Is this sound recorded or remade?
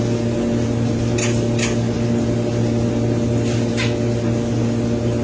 recorded